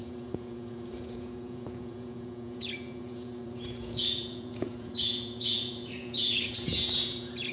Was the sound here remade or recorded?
remade